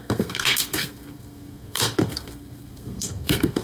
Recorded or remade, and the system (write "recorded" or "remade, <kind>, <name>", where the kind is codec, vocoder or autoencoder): remade, codec, SNAC